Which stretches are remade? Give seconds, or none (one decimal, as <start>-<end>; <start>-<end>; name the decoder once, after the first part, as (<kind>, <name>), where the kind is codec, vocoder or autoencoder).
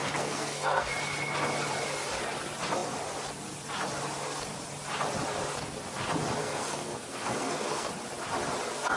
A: 0.0-0.9 (codec, SNAC); 6.4-7.9